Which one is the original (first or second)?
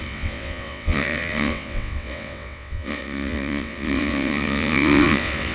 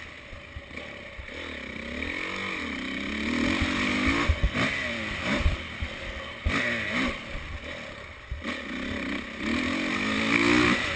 second